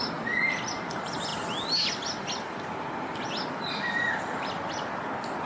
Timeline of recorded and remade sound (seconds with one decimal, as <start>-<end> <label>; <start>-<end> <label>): 0.0-5.5 recorded